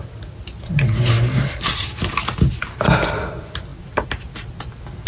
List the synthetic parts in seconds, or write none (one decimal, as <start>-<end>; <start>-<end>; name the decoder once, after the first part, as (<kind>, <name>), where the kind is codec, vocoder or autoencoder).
none